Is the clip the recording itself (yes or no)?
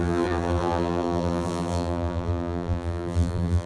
no